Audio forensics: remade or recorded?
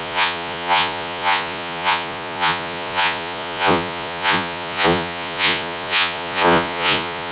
remade